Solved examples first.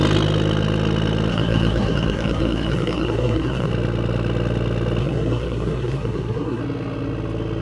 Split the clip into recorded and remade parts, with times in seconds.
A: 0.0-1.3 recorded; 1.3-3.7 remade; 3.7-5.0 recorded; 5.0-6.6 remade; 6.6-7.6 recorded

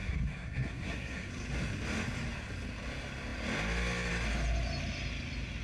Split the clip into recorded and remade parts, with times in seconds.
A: 0.0-1.3 remade; 1.3-5.6 recorded

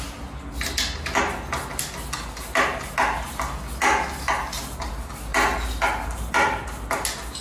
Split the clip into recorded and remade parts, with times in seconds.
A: 0.0-7.4 recorded